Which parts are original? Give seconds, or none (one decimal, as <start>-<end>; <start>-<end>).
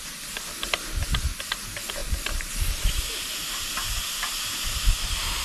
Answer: 0.0-2.0; 3.7-5.4